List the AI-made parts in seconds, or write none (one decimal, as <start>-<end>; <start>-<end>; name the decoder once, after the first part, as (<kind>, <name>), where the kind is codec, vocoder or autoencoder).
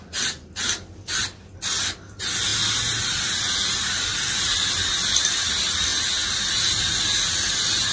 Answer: none